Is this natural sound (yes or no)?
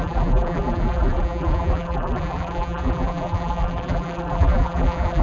no